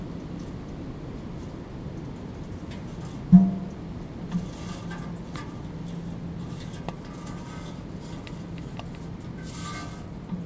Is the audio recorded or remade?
recorded